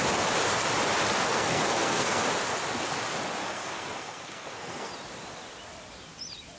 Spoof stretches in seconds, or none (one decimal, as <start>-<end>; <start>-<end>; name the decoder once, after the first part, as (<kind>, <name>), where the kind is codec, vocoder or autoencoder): 1.3-2.2 (codec, SNAC); 3.4-4.9